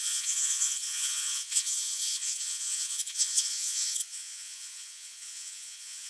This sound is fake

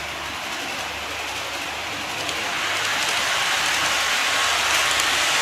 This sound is real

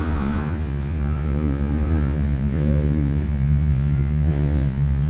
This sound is fake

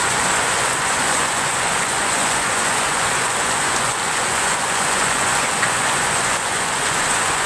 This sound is fake